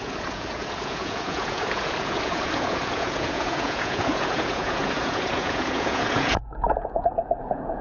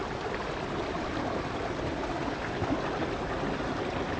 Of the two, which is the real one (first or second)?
second